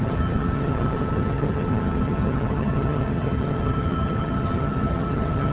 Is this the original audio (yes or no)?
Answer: no